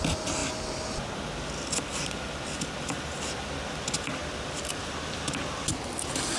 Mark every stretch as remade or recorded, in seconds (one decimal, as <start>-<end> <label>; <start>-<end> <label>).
0.0-6.4 recorded